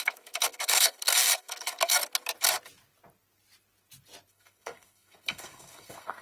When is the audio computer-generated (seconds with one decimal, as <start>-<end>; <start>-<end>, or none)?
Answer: 0.0-2.0; 4.3-6.2